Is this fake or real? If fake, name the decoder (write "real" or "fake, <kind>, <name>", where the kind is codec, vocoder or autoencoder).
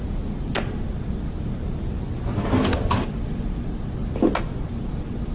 real